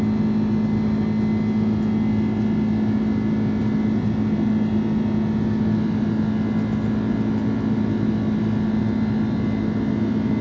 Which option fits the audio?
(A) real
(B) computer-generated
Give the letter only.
A